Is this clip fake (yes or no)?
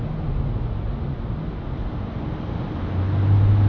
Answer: no